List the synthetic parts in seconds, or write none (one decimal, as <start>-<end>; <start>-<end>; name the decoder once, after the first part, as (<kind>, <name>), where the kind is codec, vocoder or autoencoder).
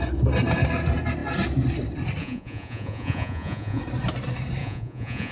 2.2-3.8 (vocoder, Vocos); 4.6-5.3